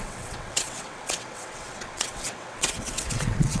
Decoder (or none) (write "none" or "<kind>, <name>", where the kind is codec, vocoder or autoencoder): vocoder, WaveNeXt